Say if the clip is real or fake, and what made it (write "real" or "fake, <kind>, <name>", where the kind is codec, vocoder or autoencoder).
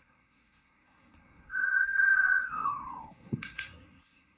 fake, codec, SNAC